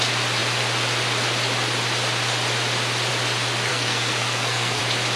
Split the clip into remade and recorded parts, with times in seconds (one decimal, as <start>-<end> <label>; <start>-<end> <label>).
0.0-3.7 recorded; 3.7-4.8 remade; 4.8-5.2 recorded